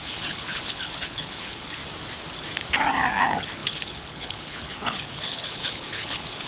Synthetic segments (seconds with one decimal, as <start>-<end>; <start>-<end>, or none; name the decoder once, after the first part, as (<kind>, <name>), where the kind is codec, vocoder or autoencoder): 0.0-1.8 (codec, HILCodec); 3.1-6.5